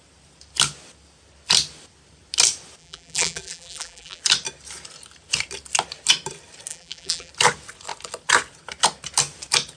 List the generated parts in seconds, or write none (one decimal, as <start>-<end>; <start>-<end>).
2.8-4.2; 6.7-7.3